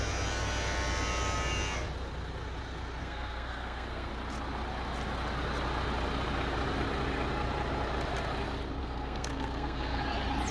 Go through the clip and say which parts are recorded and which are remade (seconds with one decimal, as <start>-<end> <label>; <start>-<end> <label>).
0.0-3.0 recorded; 3.0-4.1 remade; 4.1-8.8 recorded; 8.8-10.0 remade; 10.0-10.5 recorded